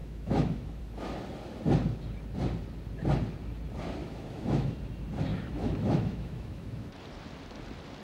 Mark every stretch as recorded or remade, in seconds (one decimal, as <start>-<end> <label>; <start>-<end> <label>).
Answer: 0.0-0.8 remade; 0.8-4.0 recorded; 4.0-4.7 remade; 4.7-5.3 recorded; 5.3-6.9 remade; 6.9-8.0 recorded